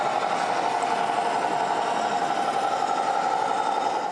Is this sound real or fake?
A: real